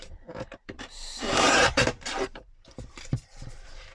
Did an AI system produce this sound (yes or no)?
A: yes